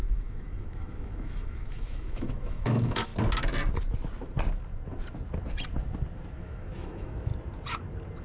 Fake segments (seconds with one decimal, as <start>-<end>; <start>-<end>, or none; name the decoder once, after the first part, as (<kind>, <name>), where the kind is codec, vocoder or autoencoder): 0.0-3.1 (autoencoder, DAC-VAE); 6.4-7.3